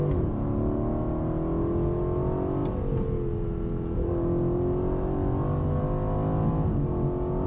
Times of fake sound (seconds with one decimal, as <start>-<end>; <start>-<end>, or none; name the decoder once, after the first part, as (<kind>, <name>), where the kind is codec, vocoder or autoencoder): none